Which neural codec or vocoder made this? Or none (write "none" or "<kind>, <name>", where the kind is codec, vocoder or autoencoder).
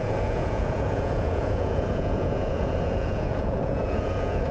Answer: vocoder, Vocos